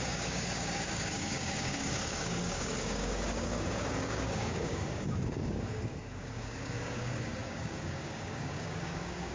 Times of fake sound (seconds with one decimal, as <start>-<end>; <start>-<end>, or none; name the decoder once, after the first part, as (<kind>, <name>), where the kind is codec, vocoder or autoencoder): 0.0-9.3 (codec, DAC)

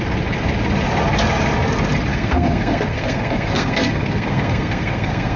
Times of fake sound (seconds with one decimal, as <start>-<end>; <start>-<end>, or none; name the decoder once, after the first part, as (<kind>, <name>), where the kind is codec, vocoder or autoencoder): 2.1-5.4 (codec, SNAC)

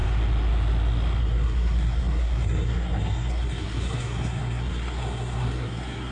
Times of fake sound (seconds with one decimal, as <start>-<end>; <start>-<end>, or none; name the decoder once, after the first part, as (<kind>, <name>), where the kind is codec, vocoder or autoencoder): 1.2-6.1 (codec, SNAC)

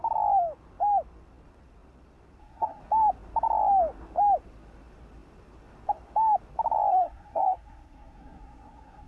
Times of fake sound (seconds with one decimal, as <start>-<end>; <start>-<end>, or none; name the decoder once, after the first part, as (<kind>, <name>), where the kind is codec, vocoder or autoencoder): 2.4-2.8 (codec, SNAC); 6.9-9.1

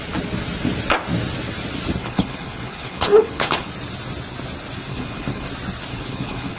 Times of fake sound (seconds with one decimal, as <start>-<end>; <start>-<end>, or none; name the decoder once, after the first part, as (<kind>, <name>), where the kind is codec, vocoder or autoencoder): 2.0-3.7 (codec, HILCodec); 4.9-5.5; 5.9-6.6

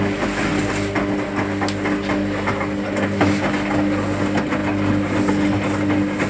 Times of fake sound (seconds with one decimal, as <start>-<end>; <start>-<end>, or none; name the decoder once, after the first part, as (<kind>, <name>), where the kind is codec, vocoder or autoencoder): none

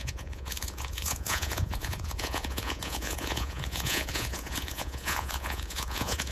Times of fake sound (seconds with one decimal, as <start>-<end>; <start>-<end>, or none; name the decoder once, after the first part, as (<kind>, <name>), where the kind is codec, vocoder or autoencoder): 0.0-6.3 (vocoder, Vocos)

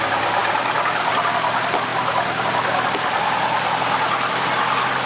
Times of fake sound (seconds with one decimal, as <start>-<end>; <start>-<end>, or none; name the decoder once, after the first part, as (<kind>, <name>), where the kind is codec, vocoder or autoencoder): 0.4-1.1 (vocoder, BigVGAN v2)